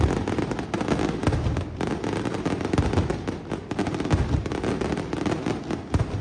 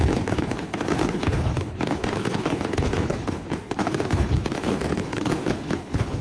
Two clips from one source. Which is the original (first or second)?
first